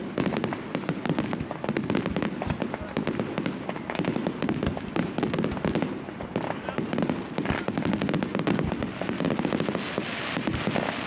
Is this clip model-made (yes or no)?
no